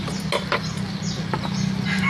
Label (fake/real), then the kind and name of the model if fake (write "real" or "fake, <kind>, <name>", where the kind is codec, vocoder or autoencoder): real